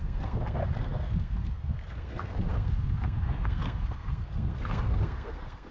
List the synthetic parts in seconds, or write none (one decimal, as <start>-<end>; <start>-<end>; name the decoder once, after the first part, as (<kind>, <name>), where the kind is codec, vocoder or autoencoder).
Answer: 0.0-5.7 (codec, SNAC)